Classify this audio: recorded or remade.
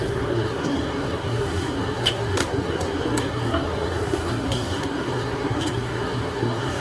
remade